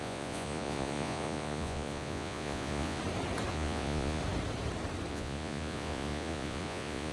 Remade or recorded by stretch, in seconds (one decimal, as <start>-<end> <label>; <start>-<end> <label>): 0.0-3.0 remade; 3.0-3.5 recorded; 3.5-4.2 remade; 4.2-5.1 recorded; 5.1-7.1 remade